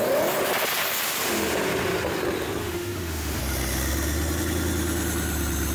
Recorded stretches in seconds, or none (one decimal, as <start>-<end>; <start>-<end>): 0.0-2.6; 3.4-5.7